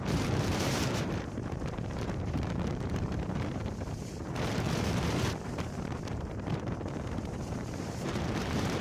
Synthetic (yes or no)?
yes